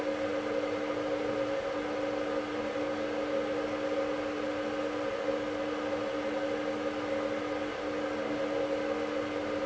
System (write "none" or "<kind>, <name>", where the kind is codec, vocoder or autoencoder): none